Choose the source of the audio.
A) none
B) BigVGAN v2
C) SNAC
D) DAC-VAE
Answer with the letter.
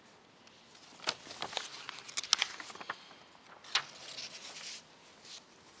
A